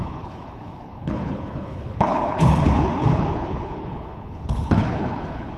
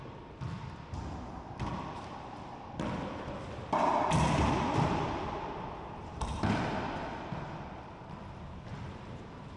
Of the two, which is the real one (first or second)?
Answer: second